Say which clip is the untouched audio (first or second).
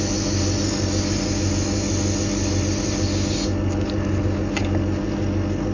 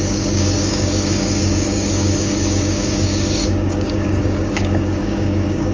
first